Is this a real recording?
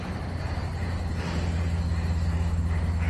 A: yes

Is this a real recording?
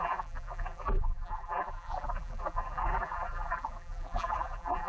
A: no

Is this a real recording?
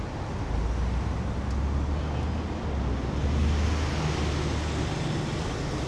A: yes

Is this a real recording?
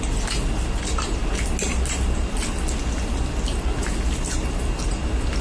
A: yes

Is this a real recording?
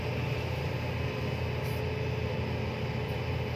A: no